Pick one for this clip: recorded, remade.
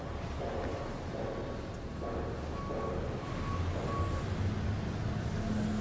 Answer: recorded